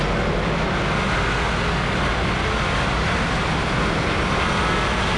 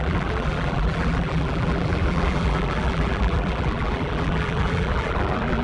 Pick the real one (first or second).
first